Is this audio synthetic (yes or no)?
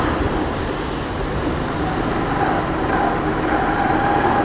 no